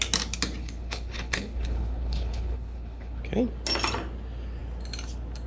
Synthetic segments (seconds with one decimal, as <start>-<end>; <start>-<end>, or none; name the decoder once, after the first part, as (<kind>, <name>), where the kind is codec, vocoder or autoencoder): 0.6-3.2 (codec, HILCodec)